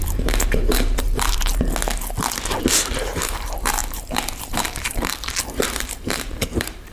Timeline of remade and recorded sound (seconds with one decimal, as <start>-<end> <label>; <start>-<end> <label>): 0.0-1.5 remade; 1.5-3.0 recorded; 3.0-6.9 remade